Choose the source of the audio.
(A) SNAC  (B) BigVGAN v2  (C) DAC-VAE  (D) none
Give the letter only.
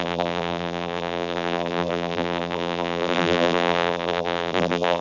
B